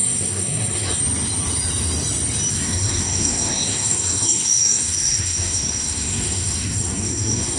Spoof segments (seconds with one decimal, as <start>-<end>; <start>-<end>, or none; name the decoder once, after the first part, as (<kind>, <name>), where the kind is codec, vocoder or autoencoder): 0.0-1.0 (codec, SNAC); 2.5-7.6